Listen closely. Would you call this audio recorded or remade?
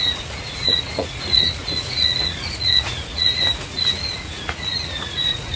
remade